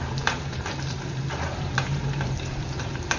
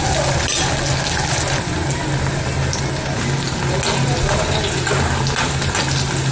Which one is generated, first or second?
first